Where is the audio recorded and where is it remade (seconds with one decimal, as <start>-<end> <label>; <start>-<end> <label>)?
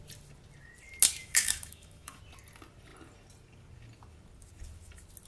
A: 0.0-1.2 recorded; 1.2-2.2 remade; 2.2-5.3 recorded